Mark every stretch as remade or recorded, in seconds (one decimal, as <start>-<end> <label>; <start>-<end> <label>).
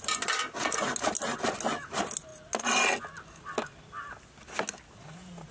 0.0-5.5 recorded